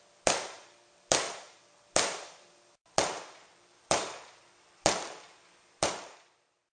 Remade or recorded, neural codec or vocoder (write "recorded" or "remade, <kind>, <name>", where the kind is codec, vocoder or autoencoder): remade, vocoder, BigVGAN v2